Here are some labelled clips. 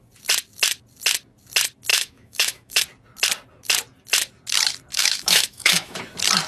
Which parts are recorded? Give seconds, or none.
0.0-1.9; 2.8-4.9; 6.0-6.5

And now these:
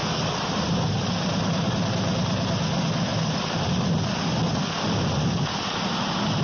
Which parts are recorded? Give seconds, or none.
0.0-6.4

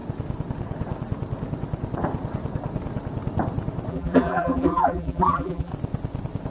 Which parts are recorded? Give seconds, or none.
0.0-3.9; 5.7-6.5